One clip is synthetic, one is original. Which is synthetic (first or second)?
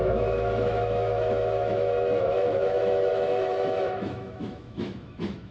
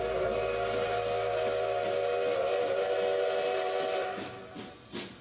first